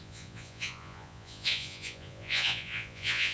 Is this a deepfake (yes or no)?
yes